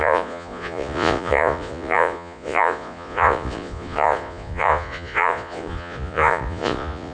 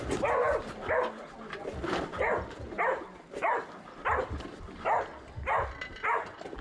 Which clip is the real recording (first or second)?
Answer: second